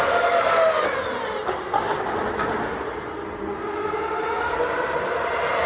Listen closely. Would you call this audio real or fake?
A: real